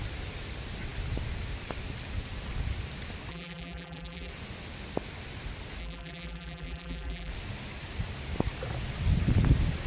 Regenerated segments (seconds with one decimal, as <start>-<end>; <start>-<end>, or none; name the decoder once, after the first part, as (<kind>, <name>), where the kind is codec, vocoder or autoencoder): 3.3-4.3 (vocoder, BigVGAN v2); 5.8-7.3